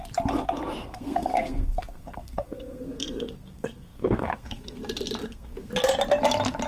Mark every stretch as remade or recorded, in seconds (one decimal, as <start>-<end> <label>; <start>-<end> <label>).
0.0-0.8 recorded; 0.8-4.8 remade; 4.8-5.2 recorded; 5.2-5.7 remade; 5.7-6.7 recorded